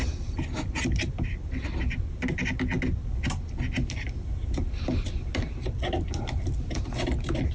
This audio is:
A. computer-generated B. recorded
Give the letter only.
B